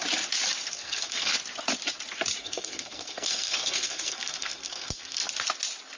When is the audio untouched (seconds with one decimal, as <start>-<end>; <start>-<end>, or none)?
0.0-0.7; 1.3-2.4; 5.2-6.0